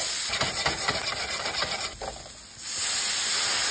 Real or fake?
real